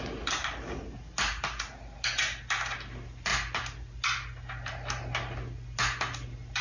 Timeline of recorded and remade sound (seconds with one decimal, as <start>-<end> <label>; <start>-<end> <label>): 0.0-6.6 recorded